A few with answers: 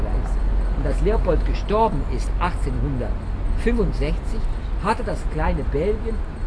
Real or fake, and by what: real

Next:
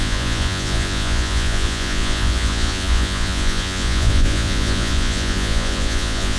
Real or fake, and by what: fake, vocoder, Vocos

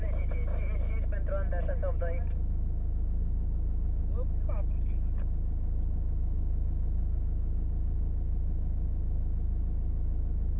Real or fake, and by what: real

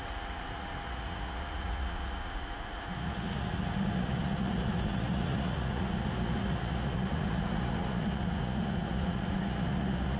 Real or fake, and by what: fake, vocoder, Vocos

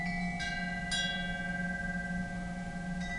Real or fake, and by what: real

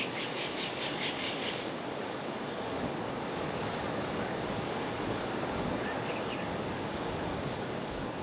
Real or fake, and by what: fake, codec, DAC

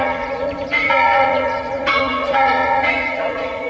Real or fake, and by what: fake, vocoder, Vocos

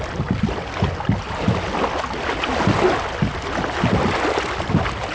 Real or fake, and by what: real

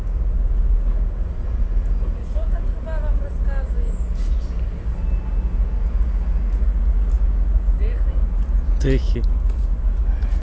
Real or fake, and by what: real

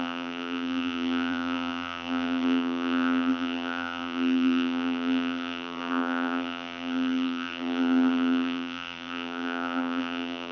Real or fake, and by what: fake, vocoder, BigVGAN v2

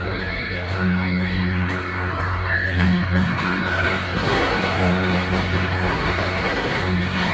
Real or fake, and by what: fake, codec, SNAC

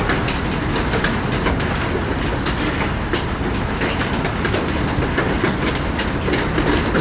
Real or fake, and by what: real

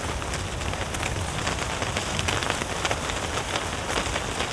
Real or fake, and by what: real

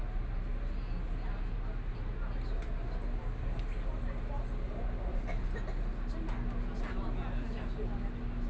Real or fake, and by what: real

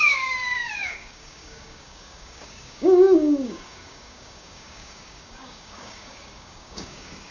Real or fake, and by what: fake, codec, DAC